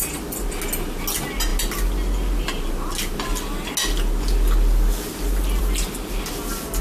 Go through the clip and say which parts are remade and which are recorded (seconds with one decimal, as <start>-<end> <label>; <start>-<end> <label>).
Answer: 0.0-6.8 recorded